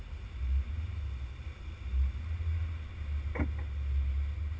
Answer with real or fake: real